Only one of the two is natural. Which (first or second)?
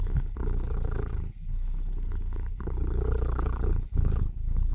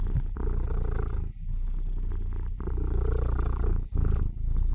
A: second